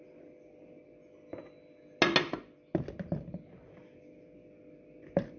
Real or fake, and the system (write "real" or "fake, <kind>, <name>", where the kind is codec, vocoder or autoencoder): real